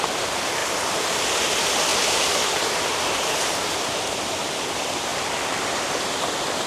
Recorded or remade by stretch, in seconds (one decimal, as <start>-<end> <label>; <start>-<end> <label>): 0.0-0.6 recorded; 0.6-1.4 remade; 1.4-1.9 recorded; 1.9-4.3 remade; 4.3-5.1 recorded; 5.1-6.0 remade; 6.0-6.7 recorded